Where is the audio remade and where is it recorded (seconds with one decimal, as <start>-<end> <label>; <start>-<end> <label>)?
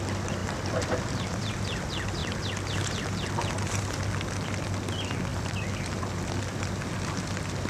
0.0-0.4 recorded; 0.4-1.6 remade; 1.6-5.3 recorded; 5.3-6.0 remade; 6.0-7.7 recorded